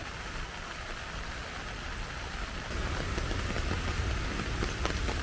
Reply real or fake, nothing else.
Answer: real